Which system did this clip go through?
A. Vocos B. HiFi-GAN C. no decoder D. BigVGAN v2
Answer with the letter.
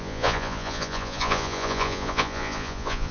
A